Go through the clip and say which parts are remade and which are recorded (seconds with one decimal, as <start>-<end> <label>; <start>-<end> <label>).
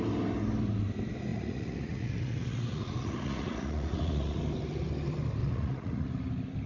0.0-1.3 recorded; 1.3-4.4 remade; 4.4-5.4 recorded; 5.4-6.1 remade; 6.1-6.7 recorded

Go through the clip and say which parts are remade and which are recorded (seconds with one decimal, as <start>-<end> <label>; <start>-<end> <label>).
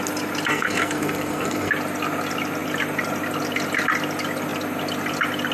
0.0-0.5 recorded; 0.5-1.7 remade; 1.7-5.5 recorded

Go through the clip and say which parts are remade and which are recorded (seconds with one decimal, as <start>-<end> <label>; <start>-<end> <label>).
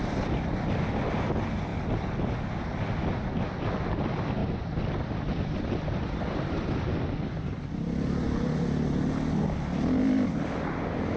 0.0-4.4 recorded; 4.4-8.2 remade; 8.2-11.2 recorded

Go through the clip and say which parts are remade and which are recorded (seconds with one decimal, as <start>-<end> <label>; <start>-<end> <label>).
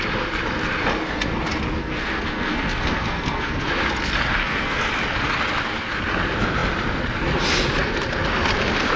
0.0-1.8 recorded; 1.8-3.7 remade; 3.7-4.4 recorded; 4.4-4.9 remade; 4.9-9.0 recorded